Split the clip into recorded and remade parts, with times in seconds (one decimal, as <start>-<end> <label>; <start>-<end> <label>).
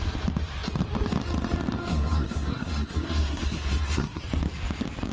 0.0-1.9 recorded; 1.9-4.2 remade; 4.2-5.1 recorded